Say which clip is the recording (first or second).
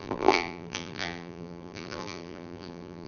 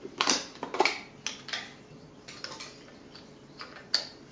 second